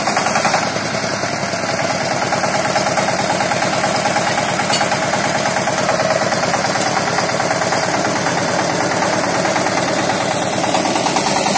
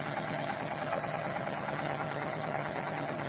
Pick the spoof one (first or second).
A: second